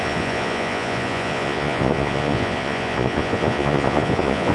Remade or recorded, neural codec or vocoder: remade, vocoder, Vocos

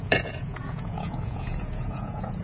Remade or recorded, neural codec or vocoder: remade, vocoder, Vocos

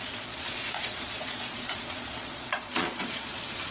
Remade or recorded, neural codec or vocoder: remade, vocoder, Vocos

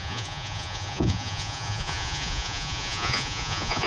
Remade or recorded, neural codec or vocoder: remade, vocoder, Vocos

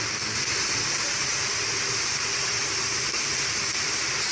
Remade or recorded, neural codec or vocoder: recorded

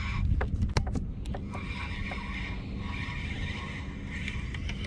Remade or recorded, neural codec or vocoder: recorded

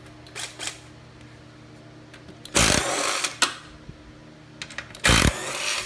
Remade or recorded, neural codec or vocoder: recorded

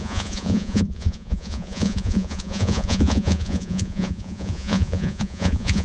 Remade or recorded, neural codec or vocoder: remade, vocoder, Vocos